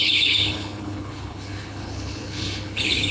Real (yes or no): no